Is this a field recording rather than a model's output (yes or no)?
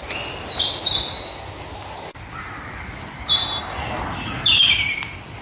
yes